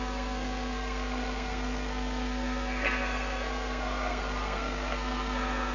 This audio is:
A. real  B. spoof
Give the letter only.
B